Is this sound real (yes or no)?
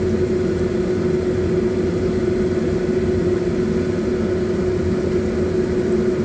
yes